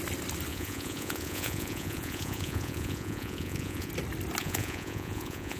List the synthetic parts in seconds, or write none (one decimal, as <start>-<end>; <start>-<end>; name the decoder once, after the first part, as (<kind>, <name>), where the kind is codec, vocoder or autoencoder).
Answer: 0.5-3.9 (vocoder, Vocos); 4.4-5.6